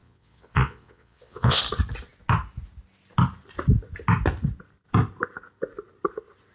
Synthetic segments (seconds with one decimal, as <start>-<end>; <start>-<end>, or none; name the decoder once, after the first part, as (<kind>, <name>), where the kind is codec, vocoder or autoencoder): 0.0-1.6 (vocoder, WaveNeXt)